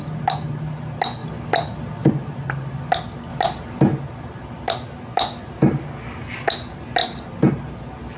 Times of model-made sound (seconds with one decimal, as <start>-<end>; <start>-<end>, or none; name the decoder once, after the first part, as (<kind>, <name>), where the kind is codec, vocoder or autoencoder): 1.2-2.1 (vocoder, BigVGAN v2); 3.3-3.8